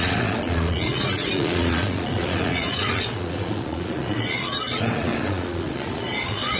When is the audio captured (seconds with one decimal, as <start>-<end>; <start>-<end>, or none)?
none